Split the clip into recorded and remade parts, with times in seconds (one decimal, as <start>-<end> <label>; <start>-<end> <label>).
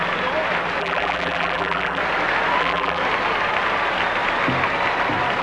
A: 0.0-0.8 recorded; 0.8-2.0 remade; 2.0-2.6 recorded; 2.6-3.0 remade; 3.0-5.4 recorded